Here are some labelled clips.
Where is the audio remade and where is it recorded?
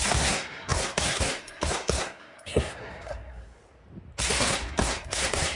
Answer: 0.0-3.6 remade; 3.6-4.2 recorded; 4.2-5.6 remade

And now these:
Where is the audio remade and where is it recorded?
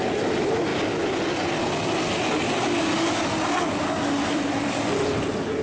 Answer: 0.0-5.6 recorded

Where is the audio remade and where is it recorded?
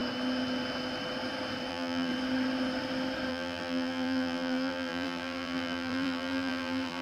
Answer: 0.0-1.7 recorded; 1.7-2.1 remade; 2.1-3.3 recorded; 3.3-7.0 remade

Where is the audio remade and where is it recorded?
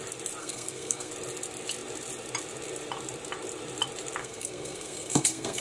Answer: 0.0-0.4 recorded; 0.4-1.1 remade; 1.1-4.2 recorded; 4.2-5.6 remade